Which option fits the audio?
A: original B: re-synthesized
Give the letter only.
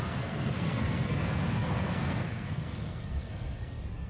B